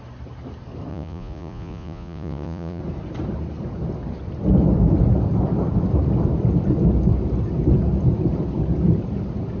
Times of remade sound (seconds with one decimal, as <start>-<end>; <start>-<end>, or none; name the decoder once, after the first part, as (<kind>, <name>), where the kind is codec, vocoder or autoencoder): 0.9-2.8 (vocoder, Vocos)